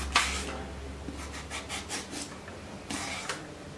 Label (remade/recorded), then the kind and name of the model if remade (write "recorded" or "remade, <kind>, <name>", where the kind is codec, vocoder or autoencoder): recorded